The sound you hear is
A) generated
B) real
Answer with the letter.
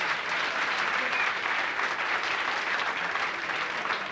B